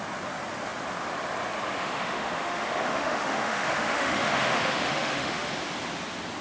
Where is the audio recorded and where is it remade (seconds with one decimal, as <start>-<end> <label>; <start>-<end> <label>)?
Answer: 0.0-1.8 recorded; 1.8-5.5 remade; 5.5-6.4 recorded